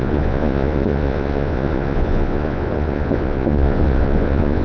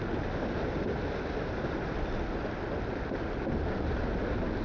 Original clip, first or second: second